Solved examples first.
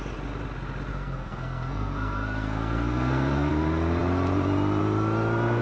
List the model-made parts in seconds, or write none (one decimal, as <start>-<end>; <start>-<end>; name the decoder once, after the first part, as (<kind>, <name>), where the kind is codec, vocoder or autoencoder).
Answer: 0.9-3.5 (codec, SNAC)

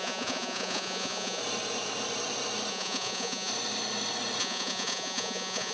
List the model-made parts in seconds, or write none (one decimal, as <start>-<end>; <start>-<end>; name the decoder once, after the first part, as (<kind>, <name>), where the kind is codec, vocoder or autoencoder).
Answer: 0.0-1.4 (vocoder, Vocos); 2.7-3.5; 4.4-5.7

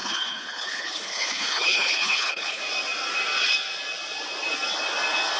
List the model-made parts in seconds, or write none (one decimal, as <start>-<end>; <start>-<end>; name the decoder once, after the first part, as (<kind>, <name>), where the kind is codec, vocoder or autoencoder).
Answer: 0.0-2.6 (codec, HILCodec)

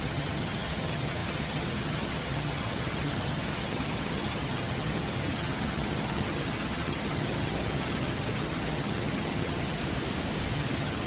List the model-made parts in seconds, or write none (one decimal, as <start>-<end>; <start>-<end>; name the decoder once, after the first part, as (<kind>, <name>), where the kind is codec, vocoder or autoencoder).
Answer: 0.0-9.8 (vocoder, HiFi-GAN); 10.5-11.1

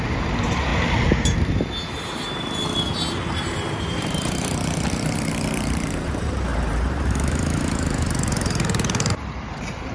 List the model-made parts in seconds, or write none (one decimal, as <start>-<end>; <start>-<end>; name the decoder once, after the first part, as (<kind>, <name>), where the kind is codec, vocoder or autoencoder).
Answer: 0.0-0.7 (vocoder, BigVGAN v2); 3.8-9.9

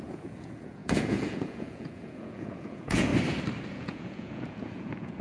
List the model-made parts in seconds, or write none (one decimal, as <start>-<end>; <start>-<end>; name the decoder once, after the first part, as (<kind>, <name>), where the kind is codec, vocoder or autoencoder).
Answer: 0.0-3.1 (vocoder, Vocos); 3.7-5.2

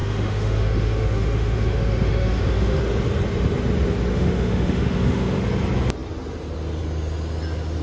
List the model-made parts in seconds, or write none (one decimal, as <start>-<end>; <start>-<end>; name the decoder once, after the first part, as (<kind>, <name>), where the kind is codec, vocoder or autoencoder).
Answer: 0.0-2.8 (autoencoder, DAC-VAE); 4.1-5.4